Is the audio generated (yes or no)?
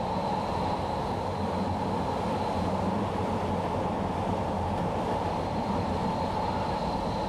no